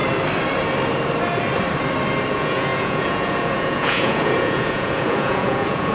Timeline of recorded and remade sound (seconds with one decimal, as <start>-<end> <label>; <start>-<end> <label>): 0.0-2.3 recorded; 2.3-5.9 remade